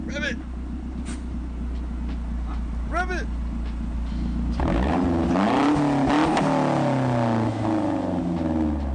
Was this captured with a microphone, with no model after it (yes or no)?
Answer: yes